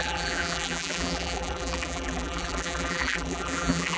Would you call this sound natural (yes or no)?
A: no